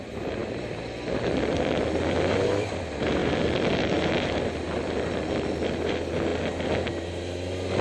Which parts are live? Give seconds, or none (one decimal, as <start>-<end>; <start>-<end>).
0.0-7.8